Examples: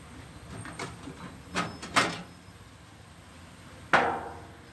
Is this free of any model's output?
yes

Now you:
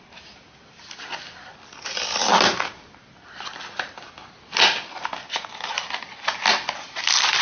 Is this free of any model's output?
yes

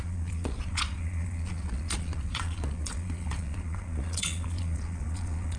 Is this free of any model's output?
no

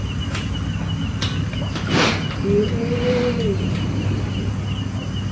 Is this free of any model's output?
yes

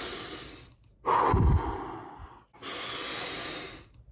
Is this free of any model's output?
yes